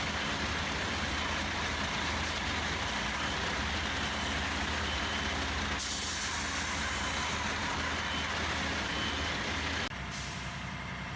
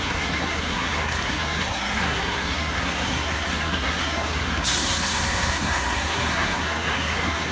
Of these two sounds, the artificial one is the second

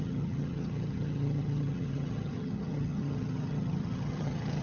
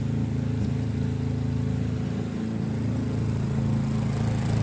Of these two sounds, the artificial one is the first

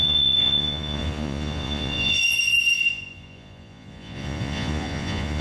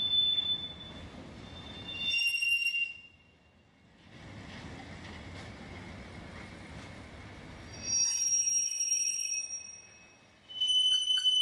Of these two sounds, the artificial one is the first